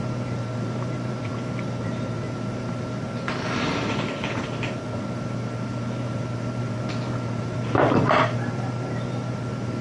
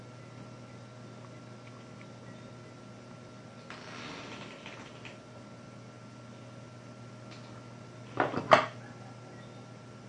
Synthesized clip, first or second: first